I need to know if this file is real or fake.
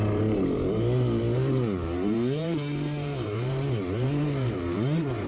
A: fake